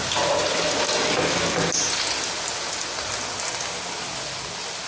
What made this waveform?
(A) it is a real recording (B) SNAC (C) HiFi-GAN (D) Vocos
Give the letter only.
A